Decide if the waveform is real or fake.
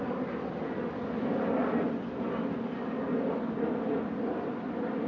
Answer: real